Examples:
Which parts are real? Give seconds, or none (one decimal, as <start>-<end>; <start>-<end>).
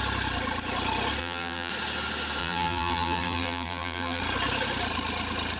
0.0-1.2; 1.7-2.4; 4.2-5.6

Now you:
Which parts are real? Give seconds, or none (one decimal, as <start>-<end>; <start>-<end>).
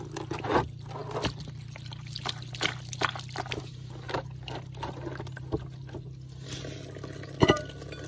0.0-8.1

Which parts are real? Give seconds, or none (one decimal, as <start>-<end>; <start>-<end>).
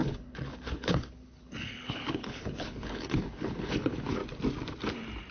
4.2-5.3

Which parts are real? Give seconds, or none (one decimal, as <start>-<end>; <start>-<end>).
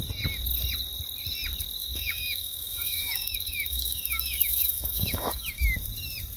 0.0-1.8; 5.6-6.4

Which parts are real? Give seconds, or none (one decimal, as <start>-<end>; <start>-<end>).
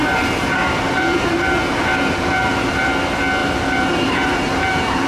2.9-3.4